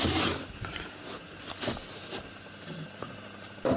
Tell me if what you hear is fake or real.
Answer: real